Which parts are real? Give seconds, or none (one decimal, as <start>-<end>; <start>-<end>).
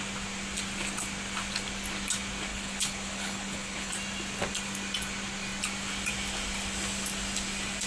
0.0-2.5; 3.9-7.9